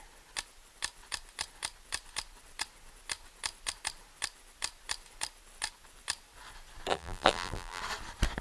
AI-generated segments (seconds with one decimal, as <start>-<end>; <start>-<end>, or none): 6.9-7.8